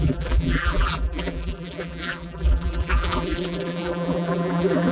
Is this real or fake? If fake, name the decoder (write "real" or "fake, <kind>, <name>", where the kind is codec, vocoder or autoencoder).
fake, vocoder, BigVGAN v2